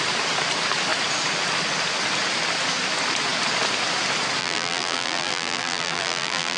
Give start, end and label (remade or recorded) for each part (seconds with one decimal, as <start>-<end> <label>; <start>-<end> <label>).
0.0-4.4 recorded; 4.4-6.6 remade